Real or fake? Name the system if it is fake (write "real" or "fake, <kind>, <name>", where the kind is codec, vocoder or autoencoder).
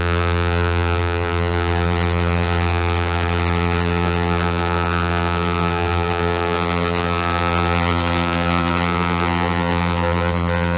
fake, vocoder, BigVGAN v2